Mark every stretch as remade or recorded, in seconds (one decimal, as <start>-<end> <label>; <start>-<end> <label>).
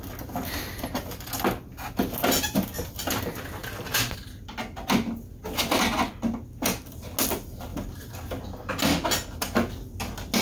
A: 0.0-10.4 recorded